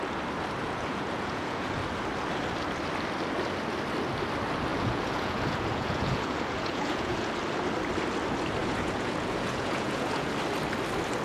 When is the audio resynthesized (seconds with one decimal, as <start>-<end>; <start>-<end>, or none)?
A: 0.6-1.8; 4.7-7.3; 8.6-10.3